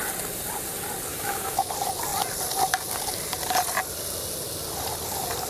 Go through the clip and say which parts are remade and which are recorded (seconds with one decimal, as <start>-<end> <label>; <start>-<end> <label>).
0.0-1.1 recorded; 1.1-1.7 remade; 1.7-5.5 recorded